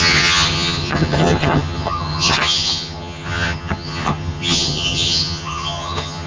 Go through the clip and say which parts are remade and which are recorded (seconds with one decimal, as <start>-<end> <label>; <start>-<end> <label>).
0.0-6.3 remade